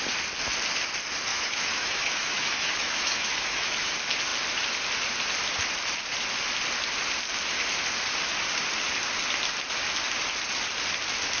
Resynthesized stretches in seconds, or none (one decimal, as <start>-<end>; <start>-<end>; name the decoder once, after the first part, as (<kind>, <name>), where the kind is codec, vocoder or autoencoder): 1.3-3.9 (autoencoder, DAC-VAE)